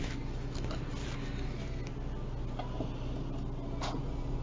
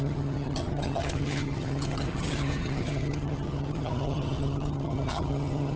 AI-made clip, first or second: second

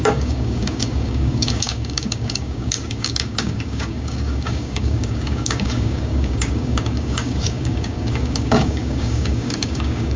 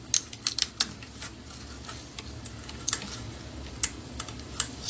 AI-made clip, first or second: first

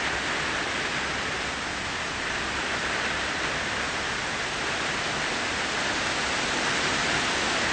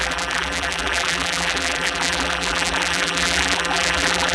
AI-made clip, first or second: second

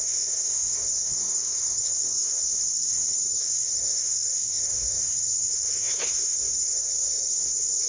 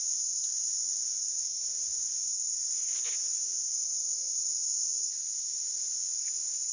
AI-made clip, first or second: first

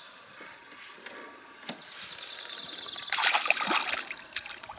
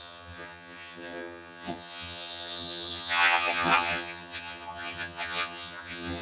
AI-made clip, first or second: second